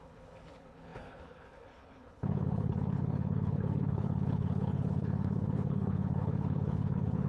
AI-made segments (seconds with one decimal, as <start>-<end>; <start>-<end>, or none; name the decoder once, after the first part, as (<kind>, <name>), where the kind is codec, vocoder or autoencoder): 0.0-7.3 (codec, HILCodec)